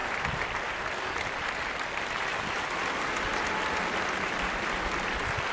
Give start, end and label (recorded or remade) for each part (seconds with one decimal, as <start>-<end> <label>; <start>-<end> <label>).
0.0-2.4 remade; 2.4-5.5 recorded